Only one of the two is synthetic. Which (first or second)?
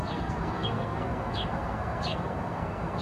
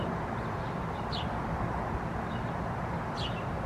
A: first